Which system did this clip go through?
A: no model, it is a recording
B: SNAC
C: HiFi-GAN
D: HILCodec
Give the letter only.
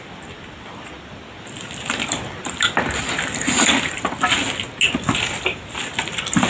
A